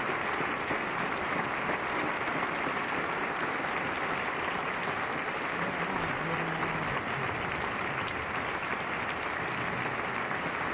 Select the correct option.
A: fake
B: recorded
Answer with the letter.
B